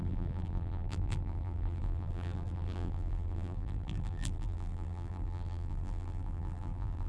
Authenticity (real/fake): fake